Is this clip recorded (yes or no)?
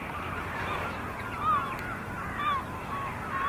yes